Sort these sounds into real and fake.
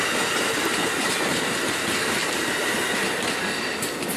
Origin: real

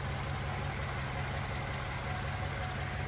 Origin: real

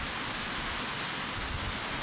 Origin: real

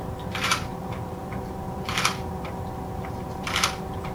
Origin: fake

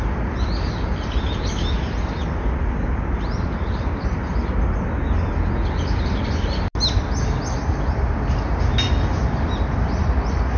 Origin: real